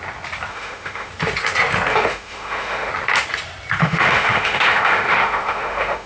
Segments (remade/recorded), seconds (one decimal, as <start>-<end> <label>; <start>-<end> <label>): 0.0-0.5 recorded; 0.5-1.1 remade; 1.1-1.9 recorded; 1.9-2.9 remade; 2.9-3.8 recorded; 3.8-6.1 remade